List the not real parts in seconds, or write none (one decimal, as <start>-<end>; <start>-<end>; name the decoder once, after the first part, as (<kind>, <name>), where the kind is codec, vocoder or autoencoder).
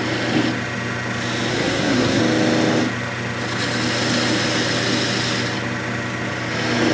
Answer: 1.5-2.2 (codec, SNAC)